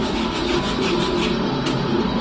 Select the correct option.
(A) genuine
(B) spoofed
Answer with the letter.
A